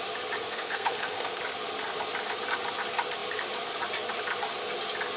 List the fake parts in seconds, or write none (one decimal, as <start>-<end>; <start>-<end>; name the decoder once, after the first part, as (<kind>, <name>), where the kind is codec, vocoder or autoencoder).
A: 0.4-1.4 (codec, SNAC)